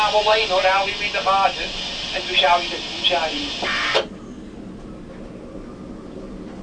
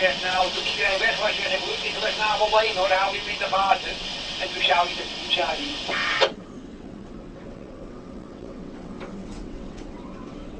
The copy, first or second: second